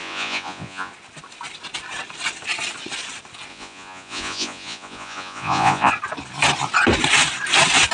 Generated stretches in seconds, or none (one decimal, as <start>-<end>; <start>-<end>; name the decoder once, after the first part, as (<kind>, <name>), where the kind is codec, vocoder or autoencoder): 0.0-0.9 (vocoder, Vocos); 3.5-5.9